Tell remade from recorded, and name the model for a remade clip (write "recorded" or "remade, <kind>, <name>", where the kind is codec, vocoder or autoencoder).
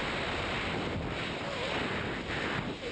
recorded